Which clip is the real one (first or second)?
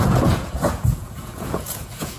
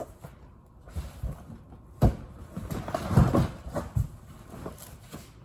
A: second